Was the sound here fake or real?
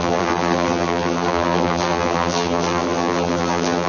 fake